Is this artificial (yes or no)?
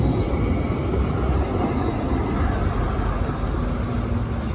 no